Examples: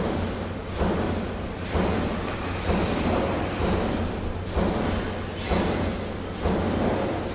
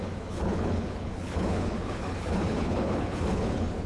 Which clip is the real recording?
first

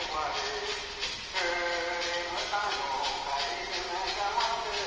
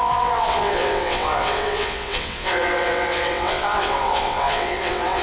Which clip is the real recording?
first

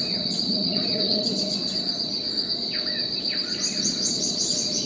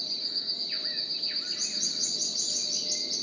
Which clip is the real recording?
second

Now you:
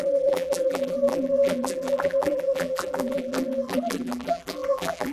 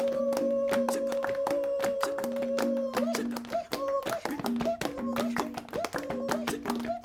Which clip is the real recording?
second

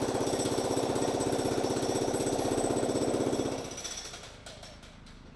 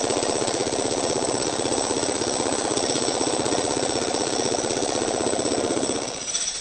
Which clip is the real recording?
first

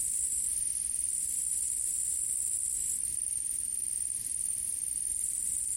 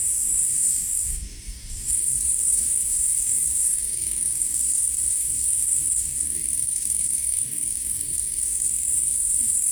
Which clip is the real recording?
first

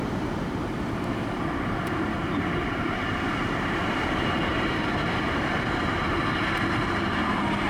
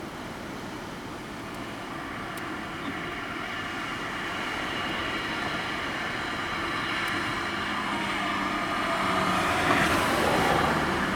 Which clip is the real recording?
second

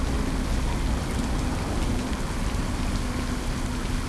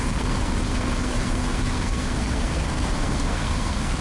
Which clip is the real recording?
first